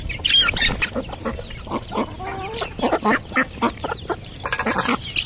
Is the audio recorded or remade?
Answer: recorded